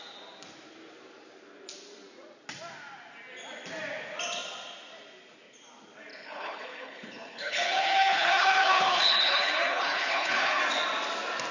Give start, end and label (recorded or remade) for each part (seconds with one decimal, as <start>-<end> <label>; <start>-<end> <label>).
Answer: 0.0-6.1 recorded; 6.1-10.6 remade; 10.6-11.5 recorded